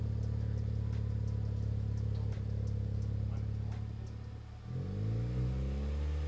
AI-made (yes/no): no